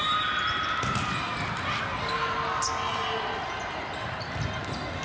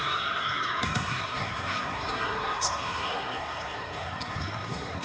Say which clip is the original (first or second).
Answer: first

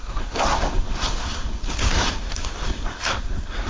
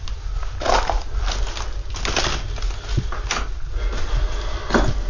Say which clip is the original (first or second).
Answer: second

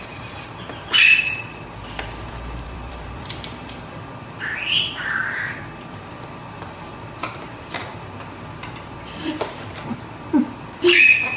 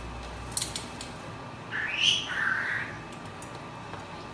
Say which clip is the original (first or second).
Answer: second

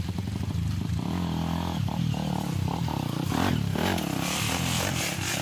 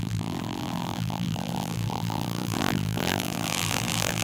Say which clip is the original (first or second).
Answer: first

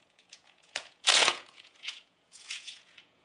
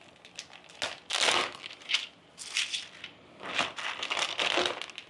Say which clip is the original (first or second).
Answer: second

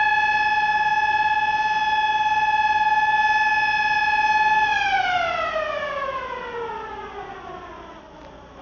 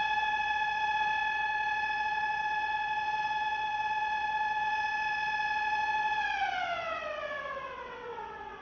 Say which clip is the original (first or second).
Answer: first